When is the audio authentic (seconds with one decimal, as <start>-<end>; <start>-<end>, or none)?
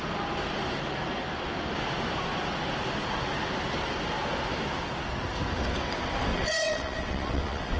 0.0-6.3